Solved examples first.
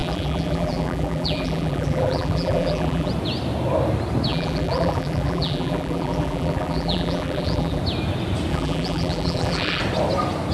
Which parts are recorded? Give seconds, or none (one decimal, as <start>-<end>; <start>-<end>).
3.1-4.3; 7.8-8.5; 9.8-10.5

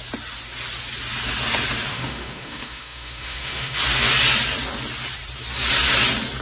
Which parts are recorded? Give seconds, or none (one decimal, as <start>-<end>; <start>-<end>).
0.0-1.9; 3.8-6.4

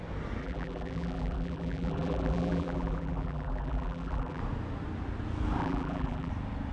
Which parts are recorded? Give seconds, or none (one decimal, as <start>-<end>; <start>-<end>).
0.0-0.4; 4.4-5.6; 6.3-6.7

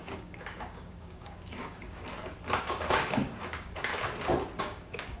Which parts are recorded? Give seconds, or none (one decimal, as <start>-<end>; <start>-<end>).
2.0-2.6; 3.9-4.6

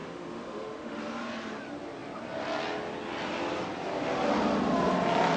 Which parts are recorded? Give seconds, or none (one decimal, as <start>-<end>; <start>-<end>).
1.0-5.4

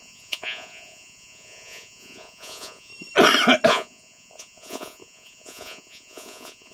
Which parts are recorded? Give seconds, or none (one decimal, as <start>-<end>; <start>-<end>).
2.9-3.7

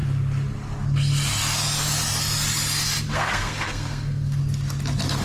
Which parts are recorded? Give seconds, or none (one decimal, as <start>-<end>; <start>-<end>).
0.0-3.1; 4.4-5.2

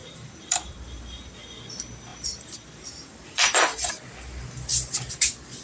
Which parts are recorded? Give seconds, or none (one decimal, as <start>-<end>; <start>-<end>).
1.0-2.1; 3.9-5.6